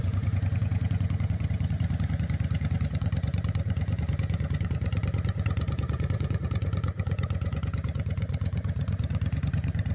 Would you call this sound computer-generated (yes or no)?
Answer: yes